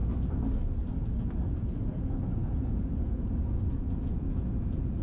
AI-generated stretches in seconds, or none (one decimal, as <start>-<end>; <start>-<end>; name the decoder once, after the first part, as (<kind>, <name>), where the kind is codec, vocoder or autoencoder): 1.2-5.0 (vocoder, Vocos)